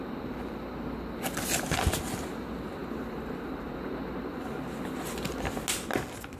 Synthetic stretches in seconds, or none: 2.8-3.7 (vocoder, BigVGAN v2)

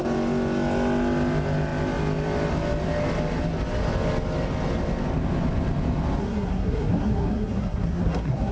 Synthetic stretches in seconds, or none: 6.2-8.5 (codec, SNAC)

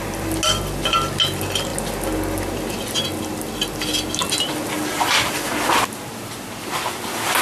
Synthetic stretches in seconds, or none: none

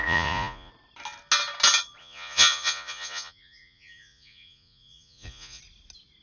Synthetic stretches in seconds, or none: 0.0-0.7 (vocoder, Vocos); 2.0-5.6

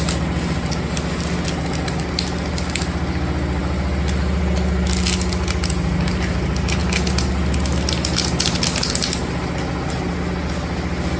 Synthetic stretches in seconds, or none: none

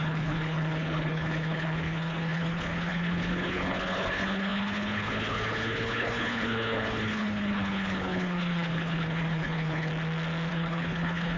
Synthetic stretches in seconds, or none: 0.0-9.9 (codec, HILCodec); 10.5-11.4

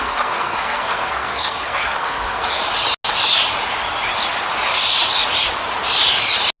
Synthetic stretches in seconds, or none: 0.0-2.6 (codec, SNAC)